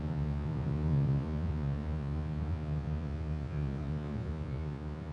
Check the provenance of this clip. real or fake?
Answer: fake